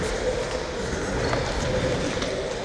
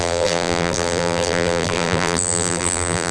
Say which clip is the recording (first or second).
first